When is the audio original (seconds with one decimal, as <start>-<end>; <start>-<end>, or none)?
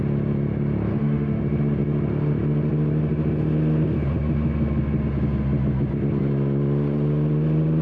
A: 0.0-0.9; 1.4-7.8